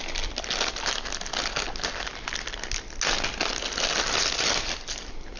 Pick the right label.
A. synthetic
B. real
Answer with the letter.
B